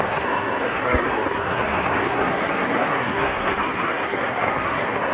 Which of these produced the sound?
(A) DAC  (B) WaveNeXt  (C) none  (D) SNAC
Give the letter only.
D